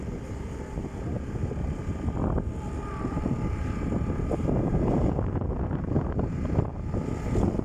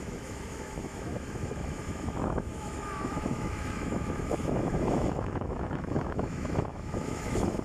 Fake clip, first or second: second